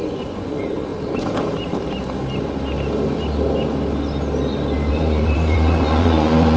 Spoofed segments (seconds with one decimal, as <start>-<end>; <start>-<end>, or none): 0.0-0.9; 4.9-6.6